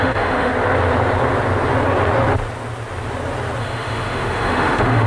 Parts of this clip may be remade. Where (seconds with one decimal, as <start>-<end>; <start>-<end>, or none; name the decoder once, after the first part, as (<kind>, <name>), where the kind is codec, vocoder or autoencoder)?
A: 0.0-0.5 (autoencoder, DAC-VAE); 3.6-5.1